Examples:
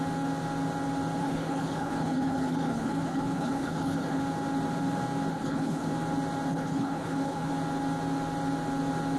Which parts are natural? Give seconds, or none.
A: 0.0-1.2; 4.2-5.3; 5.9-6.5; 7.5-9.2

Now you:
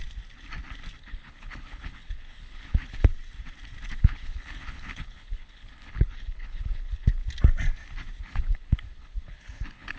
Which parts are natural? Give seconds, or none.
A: 0.0-1.0; 3.1-4.0; 7.2-8.2

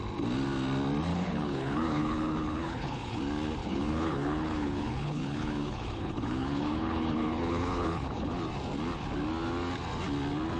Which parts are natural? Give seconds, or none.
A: 0.0-1.1; 3.2-3.6; 8.4-10.6